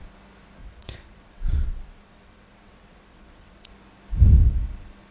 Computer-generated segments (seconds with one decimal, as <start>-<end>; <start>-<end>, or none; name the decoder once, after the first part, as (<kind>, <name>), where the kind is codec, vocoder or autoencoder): 0.6-3.7 (vocoder, WaveNeXt)